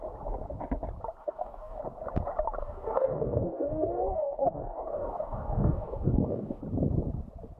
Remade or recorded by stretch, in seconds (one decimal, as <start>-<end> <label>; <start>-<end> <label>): 0.0-1.2 recorded; 1.2-1.8 remade; 1.8-2.6 recorded; 2.6-6.6 remade; 6.6-7.6 recorded